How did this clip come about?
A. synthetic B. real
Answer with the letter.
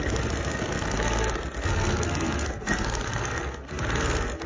A